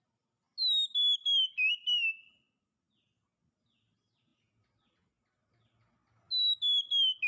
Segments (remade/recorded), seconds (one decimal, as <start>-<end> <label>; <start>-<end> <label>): 0.0-7.3 recorded